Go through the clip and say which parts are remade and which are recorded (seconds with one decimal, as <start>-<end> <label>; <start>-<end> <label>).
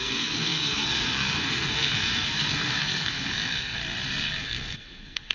0.0-3.8 remade; 3.8-4.4 recorded; 4.4-5.3 remade